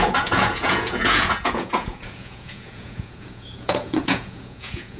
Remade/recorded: remade